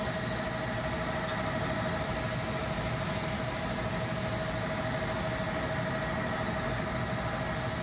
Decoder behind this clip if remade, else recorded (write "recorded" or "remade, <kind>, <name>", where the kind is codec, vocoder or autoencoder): recorded